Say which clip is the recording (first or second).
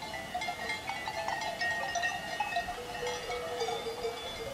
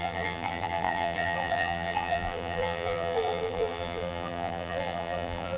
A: first